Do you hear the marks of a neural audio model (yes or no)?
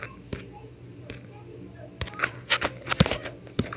no